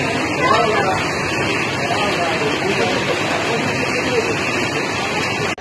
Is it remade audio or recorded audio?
recorded